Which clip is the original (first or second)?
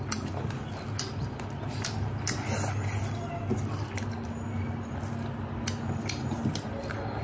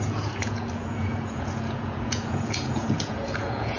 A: first